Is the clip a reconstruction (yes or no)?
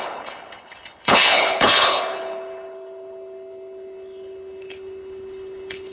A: yes